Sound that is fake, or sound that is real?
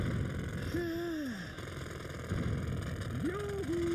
real